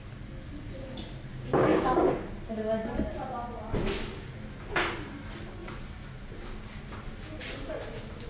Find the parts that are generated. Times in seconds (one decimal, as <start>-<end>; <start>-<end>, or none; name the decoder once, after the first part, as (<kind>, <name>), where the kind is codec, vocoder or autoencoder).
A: 1.3-2.1 (codec, DAC)